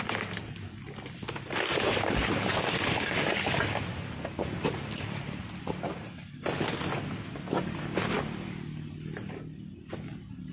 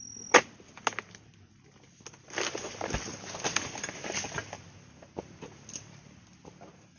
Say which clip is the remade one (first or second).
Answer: first